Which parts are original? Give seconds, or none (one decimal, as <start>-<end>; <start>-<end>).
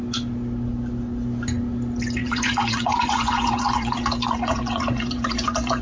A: 0.0-2.2